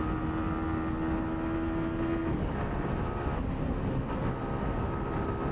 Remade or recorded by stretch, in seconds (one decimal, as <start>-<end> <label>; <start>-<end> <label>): 0.0-2.2 recorded; 2.2-3.1 remade; 3.1-5.5 recorded